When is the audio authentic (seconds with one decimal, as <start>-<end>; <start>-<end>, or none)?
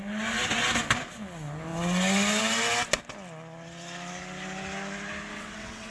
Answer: 0.0-5.3